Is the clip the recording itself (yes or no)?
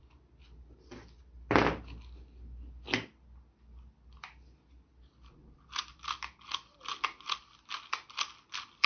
yes